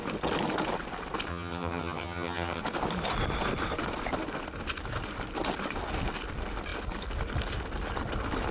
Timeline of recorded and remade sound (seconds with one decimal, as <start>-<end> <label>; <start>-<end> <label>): 0.0-1.3 recorded; 1.3-2.6 remade; 2.6-8.5 recorded